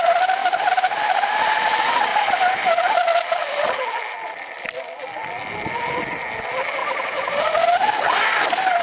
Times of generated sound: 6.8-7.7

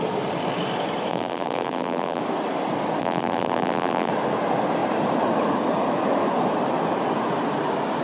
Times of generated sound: 1.1-2.2; 3.0-4.1

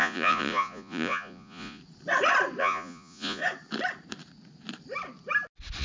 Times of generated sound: 0.0-1.8; 2.6-3.4